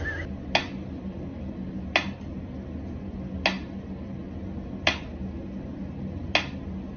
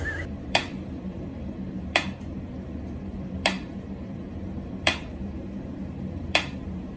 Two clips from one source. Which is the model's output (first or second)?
second